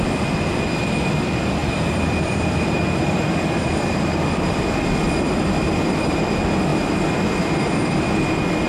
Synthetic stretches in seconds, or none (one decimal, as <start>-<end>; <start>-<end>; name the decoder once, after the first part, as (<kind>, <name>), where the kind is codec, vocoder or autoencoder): 1.6-6.3 (vocoder, BigVGAN v2); 6.7-8.1